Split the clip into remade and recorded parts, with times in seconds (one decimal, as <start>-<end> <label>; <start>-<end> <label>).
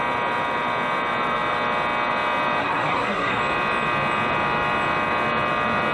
0.0-2.6 recorded; 2.6-3.4 remade; 3.4-5.9 recorded